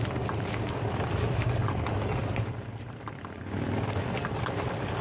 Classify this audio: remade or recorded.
remade